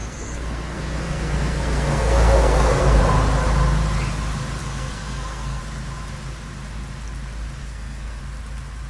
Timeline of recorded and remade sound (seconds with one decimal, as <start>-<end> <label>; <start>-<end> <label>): 0.0-3.0 remade; 3.0-4.6 recorded; 4.6-5.6 remade; 5.6-7.6 recorded; 7.6-8.2 remade; 8.2-8.9 recorded